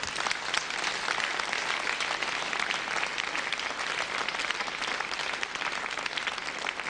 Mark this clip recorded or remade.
recorded